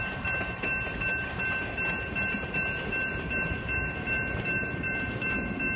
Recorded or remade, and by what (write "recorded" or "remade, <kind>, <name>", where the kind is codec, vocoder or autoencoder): remade, vocoder, BigVGAN v2